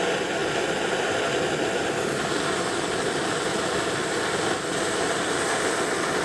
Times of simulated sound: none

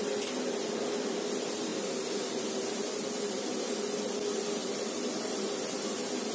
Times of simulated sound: none